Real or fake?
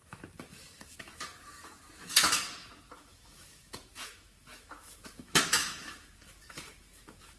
fake